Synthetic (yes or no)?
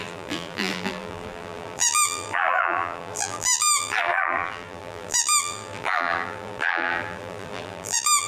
yes